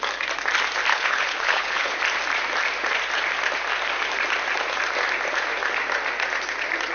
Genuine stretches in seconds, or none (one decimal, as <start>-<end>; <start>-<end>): 0.0-0.9; 2.0-6.9